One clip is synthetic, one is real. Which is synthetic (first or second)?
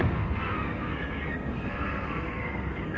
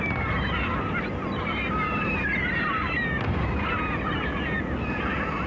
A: first